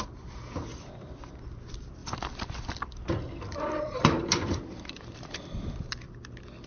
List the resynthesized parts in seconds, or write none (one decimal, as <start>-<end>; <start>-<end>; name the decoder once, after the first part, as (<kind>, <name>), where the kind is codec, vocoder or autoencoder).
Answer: 0.7-1.3 (vocoder, BigVGAN v2); 2.0-5.7